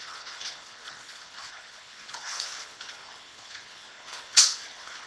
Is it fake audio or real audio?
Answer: fake